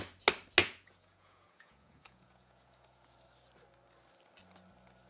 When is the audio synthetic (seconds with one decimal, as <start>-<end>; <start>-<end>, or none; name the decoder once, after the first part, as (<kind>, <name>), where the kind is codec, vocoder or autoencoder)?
0.6-3.1 (vocoder, Vocos)